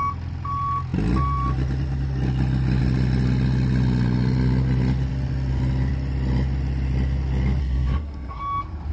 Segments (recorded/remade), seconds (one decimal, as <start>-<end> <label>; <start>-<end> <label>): 0.0-7.6 recorded; 7.6-8.4 remade; 8.4-8.9 recorded